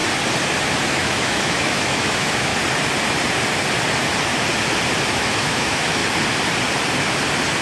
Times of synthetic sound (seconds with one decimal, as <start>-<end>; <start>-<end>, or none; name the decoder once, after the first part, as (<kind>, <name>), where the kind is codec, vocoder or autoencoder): 0.9-2.5 (autoencoder, DAC-VAE); 5.1-6.0